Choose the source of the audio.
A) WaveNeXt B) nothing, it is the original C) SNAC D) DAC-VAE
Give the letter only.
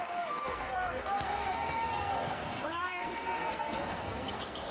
C